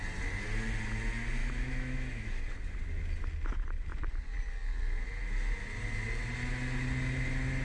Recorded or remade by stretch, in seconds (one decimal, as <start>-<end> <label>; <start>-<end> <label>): 0.0-1.4 recorded; 1.4-2.4 remade; 2.4-7.6 recorded